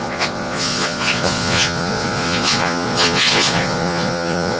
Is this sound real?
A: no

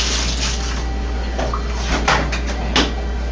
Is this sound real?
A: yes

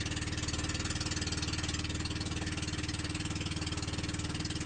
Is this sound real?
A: yes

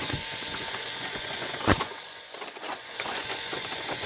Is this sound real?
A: no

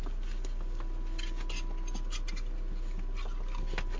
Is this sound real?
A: yes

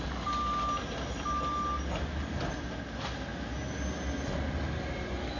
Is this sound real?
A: yes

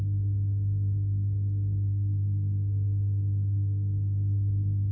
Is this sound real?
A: no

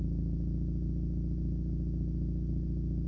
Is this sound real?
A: yes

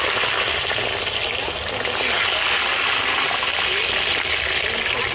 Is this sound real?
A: yes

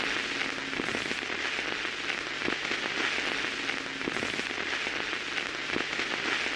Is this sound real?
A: yes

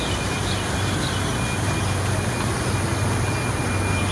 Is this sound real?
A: yes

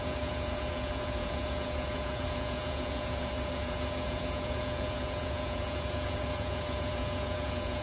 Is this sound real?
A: no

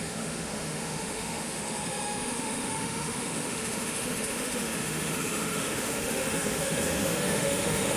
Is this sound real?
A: no